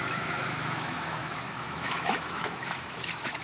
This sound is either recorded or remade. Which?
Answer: remade